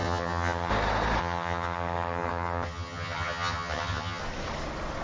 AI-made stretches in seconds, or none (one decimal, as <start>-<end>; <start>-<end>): 0.0-0.7; 1.2-4.2